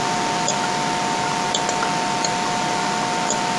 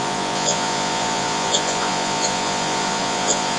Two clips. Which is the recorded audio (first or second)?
first